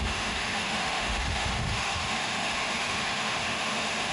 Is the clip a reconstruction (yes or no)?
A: yes